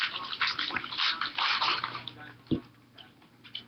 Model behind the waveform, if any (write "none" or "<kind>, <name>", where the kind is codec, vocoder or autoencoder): none